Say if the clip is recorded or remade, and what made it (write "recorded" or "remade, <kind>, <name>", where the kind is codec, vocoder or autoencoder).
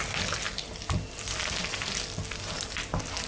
recorded